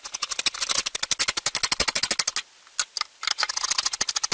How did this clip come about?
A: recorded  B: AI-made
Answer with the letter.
A